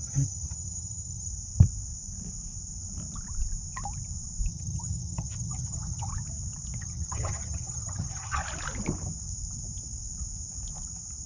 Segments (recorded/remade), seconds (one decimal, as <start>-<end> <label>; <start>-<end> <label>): 0.0-1.3 remade; 1.3-4.5 recorded; 4.5-6.1 remade; 6.1-6.8 recorded; 6.8-8.4 remade; 8.4-11.3 recorded